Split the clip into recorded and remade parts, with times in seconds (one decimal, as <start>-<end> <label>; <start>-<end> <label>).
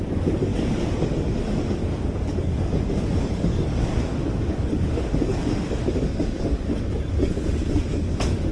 0.0-8.5 remade